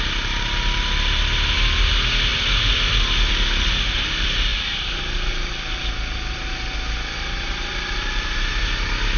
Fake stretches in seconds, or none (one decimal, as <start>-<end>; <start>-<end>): 4.5-8.5